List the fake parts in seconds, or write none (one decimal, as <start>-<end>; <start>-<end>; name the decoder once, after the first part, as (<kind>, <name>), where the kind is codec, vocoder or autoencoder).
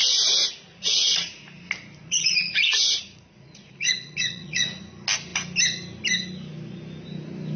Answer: 0.7-1.4 (vocoder, Vocos); 2.0-4.8